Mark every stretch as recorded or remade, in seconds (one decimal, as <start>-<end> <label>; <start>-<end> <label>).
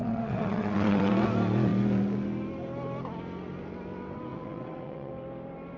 0.0-1.1 remade; 1.1-4.3 recorded; 4.3-5.1 remade; 5.1-5.8 recorded